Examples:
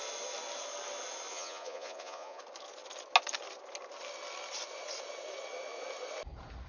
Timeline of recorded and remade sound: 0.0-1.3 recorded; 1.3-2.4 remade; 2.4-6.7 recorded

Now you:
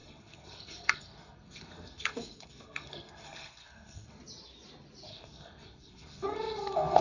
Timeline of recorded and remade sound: 0.0-4.2 remade; 4.2-5.1 recorded; 5.1-7.0 remade

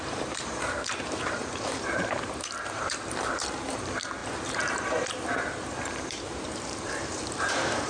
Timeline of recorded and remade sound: 0.0-7.9 remade

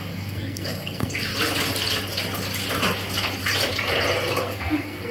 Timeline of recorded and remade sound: 0.0-1.3 remade; 1.3-4.4 recorded; 4.4-5.1 remade

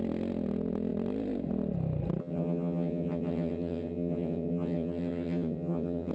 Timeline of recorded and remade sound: 0.0-2.2 recorded; 2.2-6.1 remade